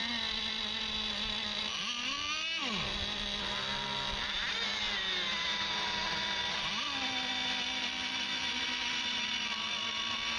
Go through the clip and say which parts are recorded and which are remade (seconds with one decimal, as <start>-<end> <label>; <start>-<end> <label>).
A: 0.0-10.4 recorded